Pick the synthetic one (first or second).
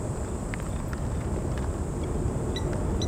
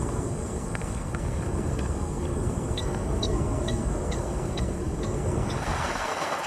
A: second